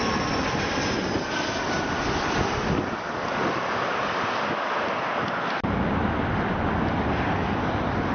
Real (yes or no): yes